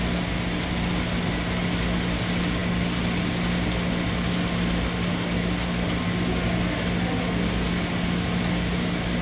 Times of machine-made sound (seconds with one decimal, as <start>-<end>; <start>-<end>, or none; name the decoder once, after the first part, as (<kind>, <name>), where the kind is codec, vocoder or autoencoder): none